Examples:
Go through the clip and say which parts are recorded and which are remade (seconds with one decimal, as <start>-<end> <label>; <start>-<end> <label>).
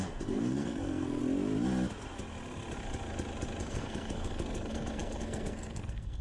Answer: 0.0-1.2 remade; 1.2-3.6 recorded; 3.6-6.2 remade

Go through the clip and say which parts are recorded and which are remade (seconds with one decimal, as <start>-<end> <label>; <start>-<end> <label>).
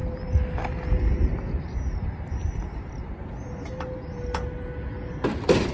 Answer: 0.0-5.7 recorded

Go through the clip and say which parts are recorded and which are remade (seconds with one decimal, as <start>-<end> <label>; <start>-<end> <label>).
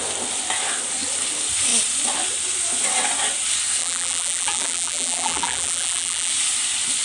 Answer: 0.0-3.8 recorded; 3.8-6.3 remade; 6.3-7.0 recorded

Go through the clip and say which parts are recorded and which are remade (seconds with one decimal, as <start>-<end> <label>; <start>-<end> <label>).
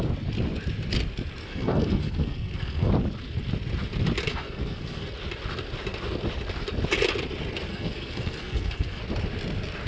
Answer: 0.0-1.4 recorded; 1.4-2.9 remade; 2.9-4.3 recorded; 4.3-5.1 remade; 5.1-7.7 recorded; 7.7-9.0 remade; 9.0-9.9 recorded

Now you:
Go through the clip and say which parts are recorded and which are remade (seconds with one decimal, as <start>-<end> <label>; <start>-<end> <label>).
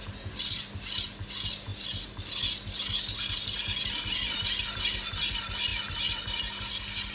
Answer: 0.0-7.1 recorded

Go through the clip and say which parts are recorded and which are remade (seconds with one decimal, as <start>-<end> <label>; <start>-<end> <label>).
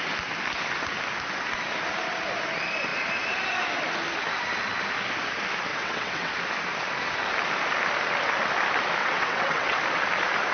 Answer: 0.0-5.7 recorded; 5.7-6.3 remade; 6.3-9.0 recorded; 9.0-9.8 remade; 9.8-10.5 recorded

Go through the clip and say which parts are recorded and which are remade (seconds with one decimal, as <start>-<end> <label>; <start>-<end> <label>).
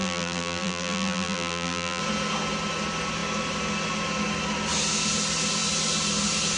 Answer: 0.0-2.0 remade; 2.0-6.6 recorded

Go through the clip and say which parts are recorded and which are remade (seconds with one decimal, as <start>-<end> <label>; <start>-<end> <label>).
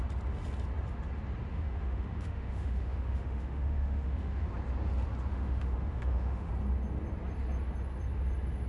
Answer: 0.0-1.5 recorded; 1.5-4.5 remade; 4.5-5.3 recorded; 5.3-6.5 remade; 6.5-8.7 recorded